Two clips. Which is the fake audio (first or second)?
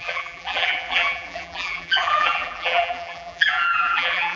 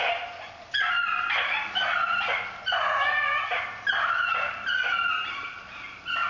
first